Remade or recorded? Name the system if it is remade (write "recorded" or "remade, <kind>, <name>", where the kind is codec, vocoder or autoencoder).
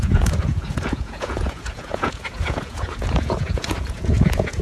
remade, vocoder, Vocos